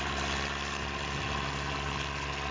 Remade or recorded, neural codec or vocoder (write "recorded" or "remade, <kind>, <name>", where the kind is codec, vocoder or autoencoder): recorded